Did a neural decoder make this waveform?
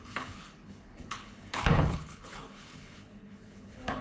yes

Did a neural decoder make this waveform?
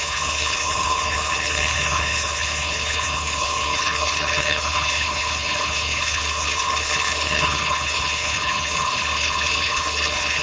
yes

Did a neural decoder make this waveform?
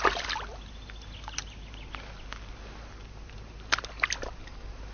no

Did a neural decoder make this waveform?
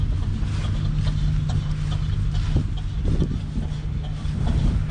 no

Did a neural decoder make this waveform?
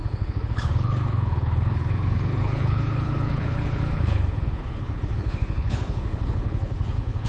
yes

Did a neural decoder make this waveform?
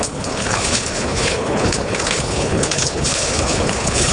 yes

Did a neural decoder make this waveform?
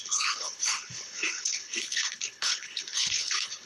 yes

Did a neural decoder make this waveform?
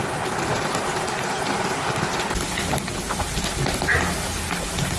no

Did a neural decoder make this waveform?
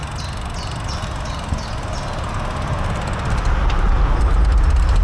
no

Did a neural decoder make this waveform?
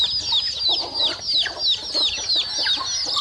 no